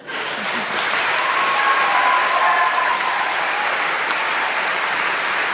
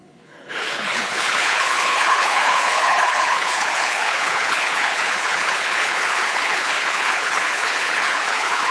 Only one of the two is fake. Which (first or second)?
second